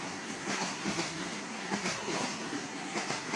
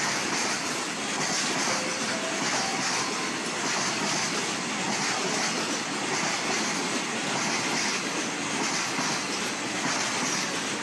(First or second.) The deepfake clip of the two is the first